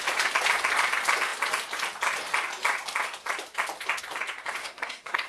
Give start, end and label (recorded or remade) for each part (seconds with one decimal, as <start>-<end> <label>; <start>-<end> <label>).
0.0-4.6 recorded; 4.6-5.3 remade